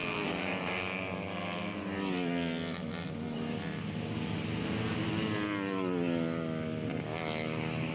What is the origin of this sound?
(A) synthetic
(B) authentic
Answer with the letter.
B